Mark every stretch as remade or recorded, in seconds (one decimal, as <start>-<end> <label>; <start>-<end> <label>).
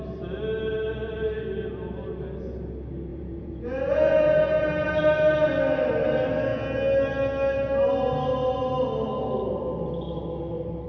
0.0-3.1 recorded; 3.1-4.9 remade; 4.9-10.9 recorded